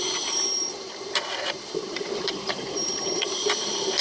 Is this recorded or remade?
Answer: remade